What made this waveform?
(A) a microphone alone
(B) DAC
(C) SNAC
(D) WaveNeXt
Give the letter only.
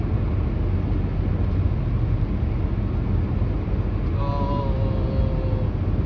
A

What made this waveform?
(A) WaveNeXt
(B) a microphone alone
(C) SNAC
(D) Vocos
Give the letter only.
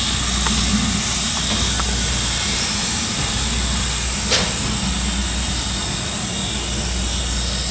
B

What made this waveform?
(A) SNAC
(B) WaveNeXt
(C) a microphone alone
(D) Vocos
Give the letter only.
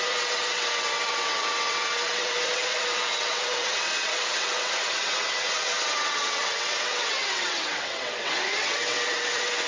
B